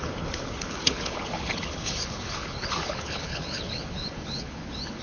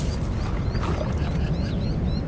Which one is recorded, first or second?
second